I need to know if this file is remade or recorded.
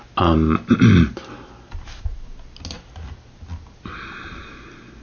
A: recorded